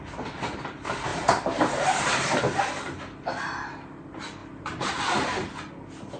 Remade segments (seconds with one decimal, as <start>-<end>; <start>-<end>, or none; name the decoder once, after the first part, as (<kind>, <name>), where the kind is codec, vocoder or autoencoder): 1.1-2.4 (vocoder, BigVGAN v2)